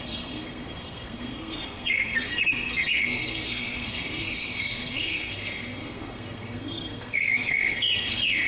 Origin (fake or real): fake